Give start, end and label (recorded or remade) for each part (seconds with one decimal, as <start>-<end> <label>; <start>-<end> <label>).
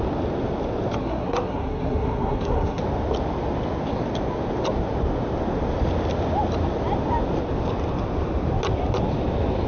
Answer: 0.0-1.0 recorded; 1.0-2.8 remade; 2.8-9.7 recorded